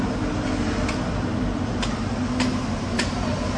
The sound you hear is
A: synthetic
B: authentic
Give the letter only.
B